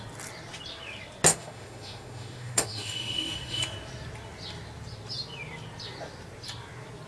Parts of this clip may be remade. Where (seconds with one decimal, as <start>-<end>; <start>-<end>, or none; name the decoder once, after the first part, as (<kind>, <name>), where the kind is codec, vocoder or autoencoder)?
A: 1.3-3.6 (autoencoder, DAC-VAE)